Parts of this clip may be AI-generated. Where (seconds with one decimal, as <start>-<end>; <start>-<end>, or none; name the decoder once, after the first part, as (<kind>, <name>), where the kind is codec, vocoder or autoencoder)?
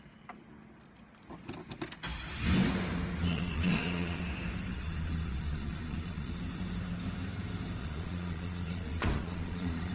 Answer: 3.2-4.2 (vocoder, Vocos); 4.7-6.3; 7.8-9.9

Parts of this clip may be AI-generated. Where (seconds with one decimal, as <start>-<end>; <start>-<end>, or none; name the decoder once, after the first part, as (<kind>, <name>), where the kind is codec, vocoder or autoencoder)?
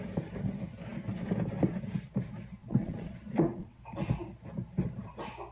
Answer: 2.6-3.8 (vocoder, Vocos)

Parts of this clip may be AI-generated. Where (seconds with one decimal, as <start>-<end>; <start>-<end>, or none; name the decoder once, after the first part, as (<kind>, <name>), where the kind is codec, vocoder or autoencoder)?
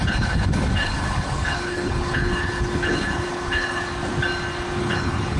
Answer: 0.0-3.9 (codec, HILCodec); 4.8-5.4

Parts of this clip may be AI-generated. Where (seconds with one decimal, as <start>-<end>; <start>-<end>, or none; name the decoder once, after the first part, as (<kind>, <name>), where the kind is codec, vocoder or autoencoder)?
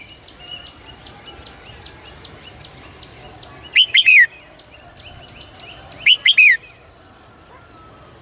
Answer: none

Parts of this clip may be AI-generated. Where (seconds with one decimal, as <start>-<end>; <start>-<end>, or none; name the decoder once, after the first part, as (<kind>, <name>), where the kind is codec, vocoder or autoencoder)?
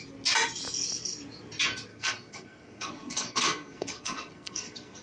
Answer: 1.9-5.0 (codec, SNAC)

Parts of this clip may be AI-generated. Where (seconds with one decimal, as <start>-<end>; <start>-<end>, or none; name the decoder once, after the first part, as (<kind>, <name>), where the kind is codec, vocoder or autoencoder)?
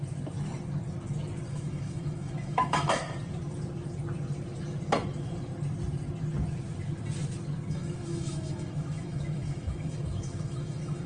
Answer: 1.5-3.0 (autoencoder, DAC-VAE); 7.7-11.1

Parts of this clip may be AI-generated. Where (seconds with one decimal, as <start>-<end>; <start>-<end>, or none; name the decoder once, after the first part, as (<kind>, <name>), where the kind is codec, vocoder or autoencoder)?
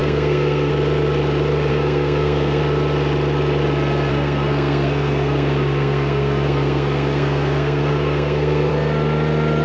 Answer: 0.0-0.7 (codec, SNAC); 1.7-2.6; 4.1-8.7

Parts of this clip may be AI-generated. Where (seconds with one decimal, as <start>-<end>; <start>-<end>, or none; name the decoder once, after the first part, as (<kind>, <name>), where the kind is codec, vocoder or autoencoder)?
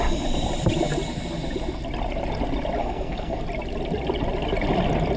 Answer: 2.8-3.4 (codec, SNAC)